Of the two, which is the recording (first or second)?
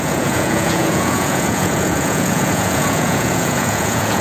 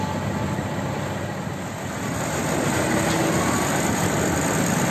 second